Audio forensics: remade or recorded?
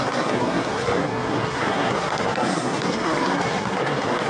remade